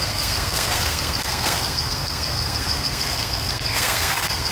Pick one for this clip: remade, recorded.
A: remade